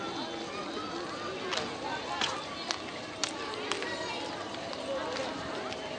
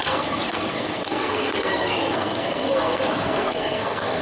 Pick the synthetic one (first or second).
second